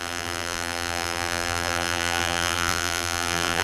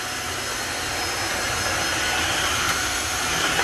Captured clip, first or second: second